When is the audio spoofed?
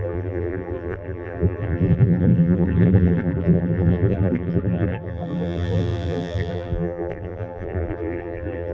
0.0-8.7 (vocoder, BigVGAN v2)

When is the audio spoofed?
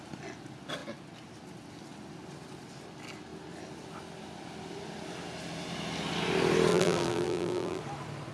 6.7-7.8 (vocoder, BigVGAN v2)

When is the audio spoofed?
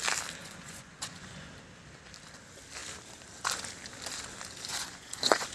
0.4-1.5 (vocoder, Vocos); 4.7-5.5